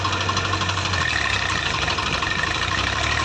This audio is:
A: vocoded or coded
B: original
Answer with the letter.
B